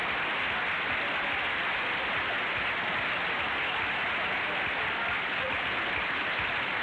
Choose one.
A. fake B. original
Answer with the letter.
B